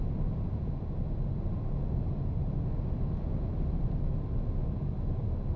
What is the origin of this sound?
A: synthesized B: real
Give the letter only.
B